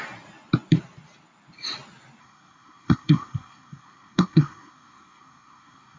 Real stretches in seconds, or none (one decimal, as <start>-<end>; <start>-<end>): 0.0-2.2

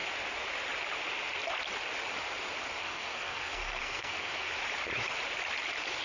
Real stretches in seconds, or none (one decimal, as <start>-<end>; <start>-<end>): 0.0-2.8; 4.5-6.0

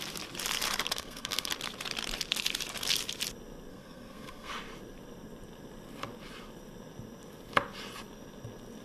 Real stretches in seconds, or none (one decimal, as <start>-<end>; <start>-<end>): 0.0-0.9; 1.5-3.7; 4.5-8.8